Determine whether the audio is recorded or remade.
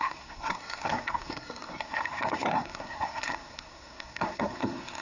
remade